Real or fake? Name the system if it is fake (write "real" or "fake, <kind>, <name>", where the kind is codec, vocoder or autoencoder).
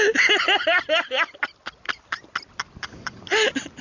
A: real